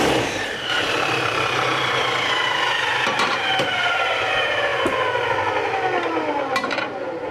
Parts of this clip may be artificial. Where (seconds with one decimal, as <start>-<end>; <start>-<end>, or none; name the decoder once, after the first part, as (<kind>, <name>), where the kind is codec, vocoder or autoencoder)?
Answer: 0.0-4.7 (vocoder, BigVGAN v2); 6.3-7.3